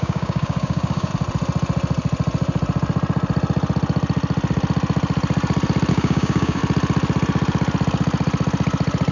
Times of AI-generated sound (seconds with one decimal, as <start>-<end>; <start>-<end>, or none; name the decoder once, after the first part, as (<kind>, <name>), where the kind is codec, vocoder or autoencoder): 0.0-1.1 (codec, DAC); 5.9-6.6